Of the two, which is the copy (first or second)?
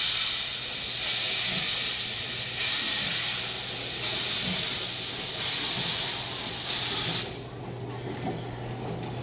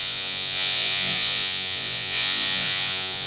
second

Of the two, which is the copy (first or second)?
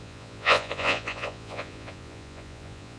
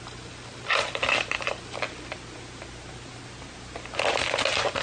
first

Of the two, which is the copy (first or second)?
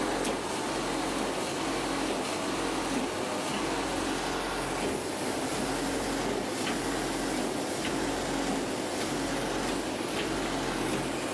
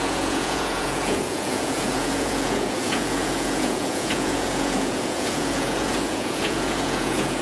second